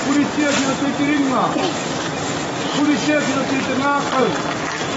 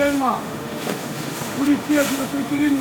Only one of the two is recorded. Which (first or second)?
first